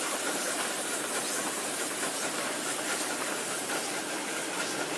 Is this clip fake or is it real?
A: fake